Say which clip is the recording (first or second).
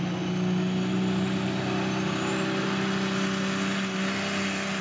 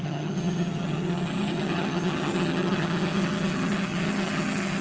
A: first